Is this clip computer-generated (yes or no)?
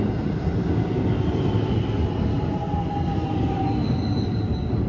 no